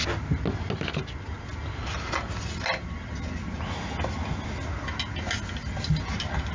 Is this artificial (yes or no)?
no